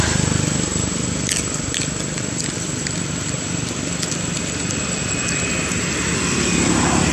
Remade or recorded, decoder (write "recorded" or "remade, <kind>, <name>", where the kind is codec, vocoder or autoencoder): recorded